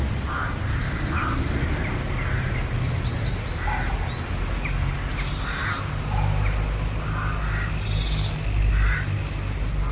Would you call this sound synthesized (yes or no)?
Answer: no